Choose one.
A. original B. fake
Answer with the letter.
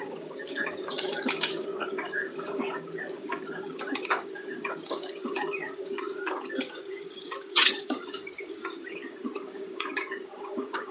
B